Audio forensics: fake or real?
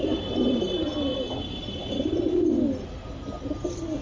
real